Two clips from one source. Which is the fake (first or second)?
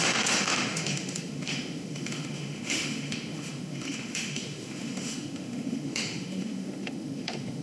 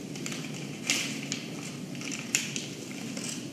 first